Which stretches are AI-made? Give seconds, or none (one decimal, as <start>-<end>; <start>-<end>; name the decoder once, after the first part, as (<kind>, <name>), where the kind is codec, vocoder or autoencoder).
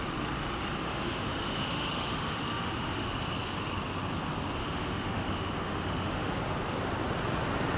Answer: 0.8-3.1 (autoencoder, DAC-VAE); 4.6-6.3